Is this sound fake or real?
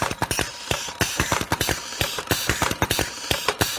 fake